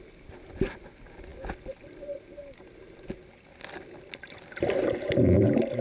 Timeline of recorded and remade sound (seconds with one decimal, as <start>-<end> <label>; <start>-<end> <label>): 0.0-5.8 recorded